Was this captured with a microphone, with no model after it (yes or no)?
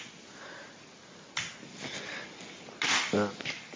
yes